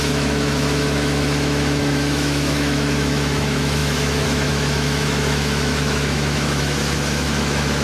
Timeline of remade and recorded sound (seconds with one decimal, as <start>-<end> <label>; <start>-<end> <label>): 0.0-7.8 remade